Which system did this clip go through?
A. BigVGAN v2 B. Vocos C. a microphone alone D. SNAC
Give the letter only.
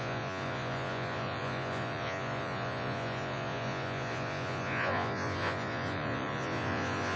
B